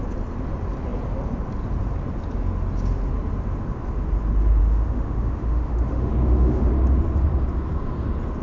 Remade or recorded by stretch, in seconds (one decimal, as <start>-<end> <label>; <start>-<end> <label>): 0.0-4.6 recorded; 4.6-6.7 remade; 6.7-8.4 recorded